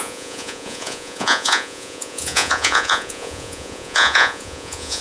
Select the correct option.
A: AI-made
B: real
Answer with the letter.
A